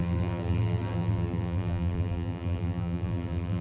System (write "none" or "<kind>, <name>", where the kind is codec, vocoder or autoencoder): vocoder, BigVGAN v2